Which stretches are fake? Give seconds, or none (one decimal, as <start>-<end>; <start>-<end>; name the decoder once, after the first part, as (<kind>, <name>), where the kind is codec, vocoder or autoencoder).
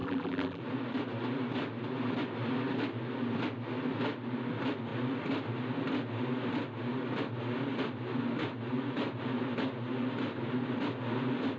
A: 0.0-0.6 (vocoder, BigVGAN v2)